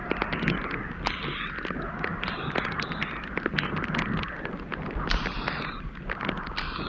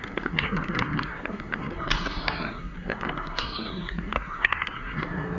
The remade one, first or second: second